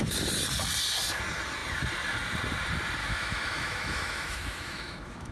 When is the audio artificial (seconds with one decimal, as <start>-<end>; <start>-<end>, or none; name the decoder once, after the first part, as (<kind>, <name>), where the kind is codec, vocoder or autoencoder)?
3.0-5.3 (autoencoder, DAC-VAE)

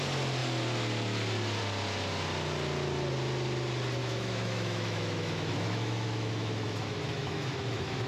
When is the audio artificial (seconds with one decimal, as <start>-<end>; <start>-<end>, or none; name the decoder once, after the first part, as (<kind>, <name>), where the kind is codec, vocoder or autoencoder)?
4.0-8.1 (autoencoder, DAC-VAE)

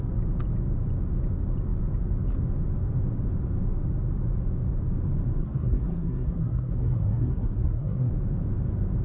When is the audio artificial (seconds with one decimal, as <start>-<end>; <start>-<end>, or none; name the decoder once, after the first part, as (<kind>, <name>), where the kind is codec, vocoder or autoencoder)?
5.4-8.1 (codec, SNAC)

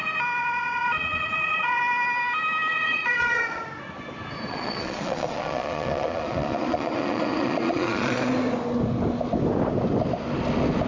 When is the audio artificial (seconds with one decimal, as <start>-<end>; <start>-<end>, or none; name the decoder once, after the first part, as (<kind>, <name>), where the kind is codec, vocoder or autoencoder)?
0.4-1.8 (vocoder, Vocos); 2.7-3.6; 4.5-8.3

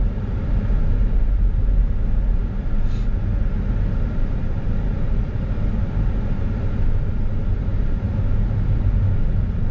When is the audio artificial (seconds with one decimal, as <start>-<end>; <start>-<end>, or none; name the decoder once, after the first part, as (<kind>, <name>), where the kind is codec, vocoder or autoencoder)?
none